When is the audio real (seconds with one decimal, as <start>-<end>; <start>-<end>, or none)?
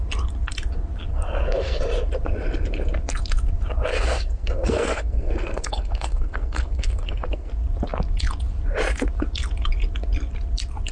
0.0-1.1; 1.8-3.9; 7.5-10.9